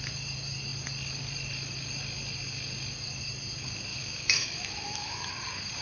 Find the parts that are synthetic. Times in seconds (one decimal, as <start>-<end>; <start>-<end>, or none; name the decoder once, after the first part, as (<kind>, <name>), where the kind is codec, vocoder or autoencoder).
3.9-5.3 (autoencoder, DAC-VAE)